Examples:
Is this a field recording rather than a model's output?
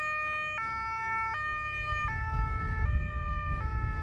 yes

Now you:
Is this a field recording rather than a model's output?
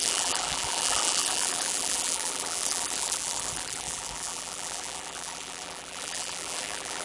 no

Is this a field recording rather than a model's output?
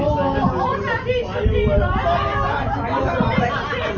yes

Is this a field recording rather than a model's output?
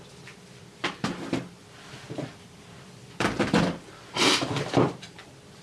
no